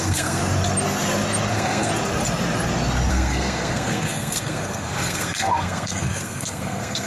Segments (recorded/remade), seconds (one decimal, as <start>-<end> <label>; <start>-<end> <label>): 0.0-0.4 remade; 0.4-1.5 recorded; 1.5-1.9 remade; 1.9-3.1 recorded; 3.1-7.1 remade